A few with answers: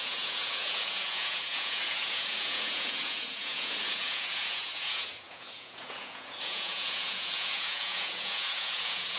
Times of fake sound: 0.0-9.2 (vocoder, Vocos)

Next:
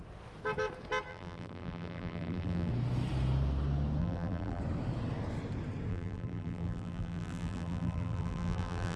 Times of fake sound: 1.1-2.7 (vocoder, BigVGAN v2); 4.0-4.6; 5.9-9.0

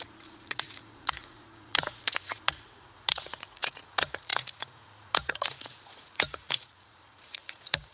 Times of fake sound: 0.0-7.9 (vocoder, Vocos)